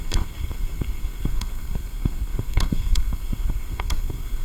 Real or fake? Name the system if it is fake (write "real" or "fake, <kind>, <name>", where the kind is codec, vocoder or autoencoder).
fake, codec, SNAC